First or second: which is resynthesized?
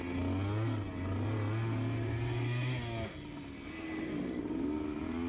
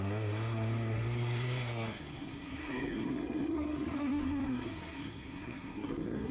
second